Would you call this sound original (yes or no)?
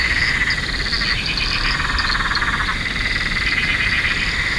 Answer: yes